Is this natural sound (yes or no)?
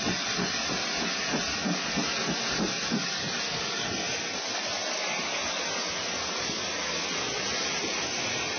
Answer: yes